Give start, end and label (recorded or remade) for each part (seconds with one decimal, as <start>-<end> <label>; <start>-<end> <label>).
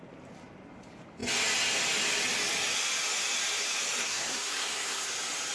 0.0-4.0 recorded; 4.0-5.1 remade; 5.1-5.5 recorded